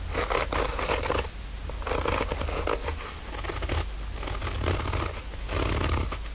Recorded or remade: recorded